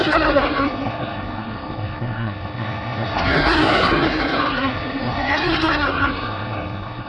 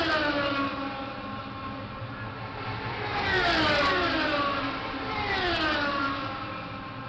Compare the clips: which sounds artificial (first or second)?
first